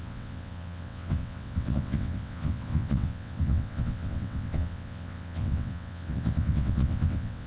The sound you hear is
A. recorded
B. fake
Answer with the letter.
B